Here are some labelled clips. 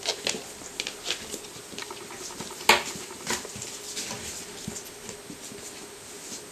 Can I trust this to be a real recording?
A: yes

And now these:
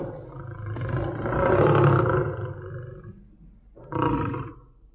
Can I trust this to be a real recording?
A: yes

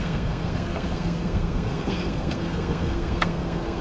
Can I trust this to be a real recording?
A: no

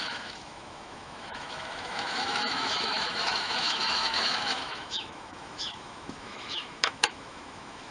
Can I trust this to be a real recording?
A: no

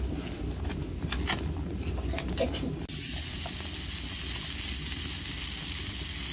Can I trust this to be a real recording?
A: yes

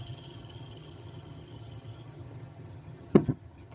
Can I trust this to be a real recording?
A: no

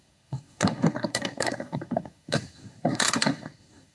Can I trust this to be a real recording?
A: no